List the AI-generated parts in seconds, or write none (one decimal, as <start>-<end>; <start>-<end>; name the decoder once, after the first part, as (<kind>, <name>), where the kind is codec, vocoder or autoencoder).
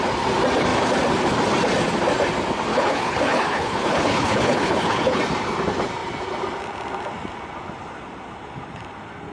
2.7-5.2 (codec, HILCodec)